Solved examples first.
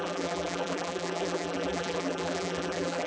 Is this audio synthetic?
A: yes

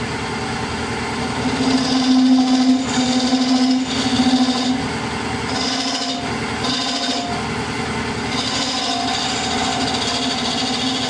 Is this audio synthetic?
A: no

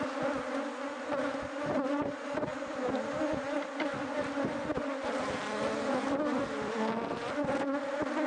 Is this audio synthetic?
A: no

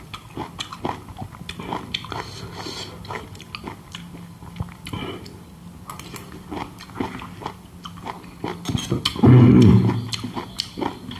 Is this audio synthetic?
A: no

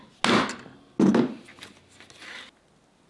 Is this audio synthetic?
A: no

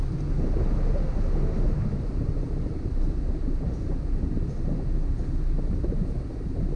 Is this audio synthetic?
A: no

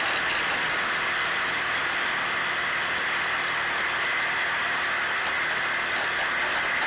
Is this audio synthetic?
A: no